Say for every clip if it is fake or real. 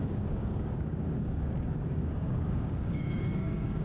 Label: fake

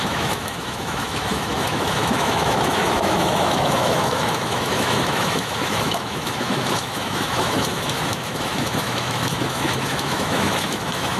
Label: fake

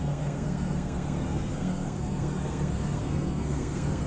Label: fake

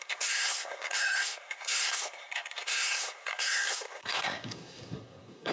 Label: fake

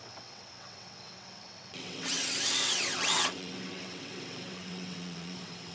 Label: fake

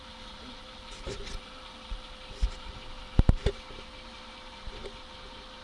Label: real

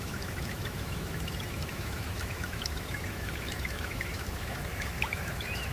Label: fake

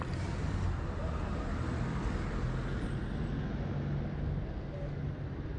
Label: real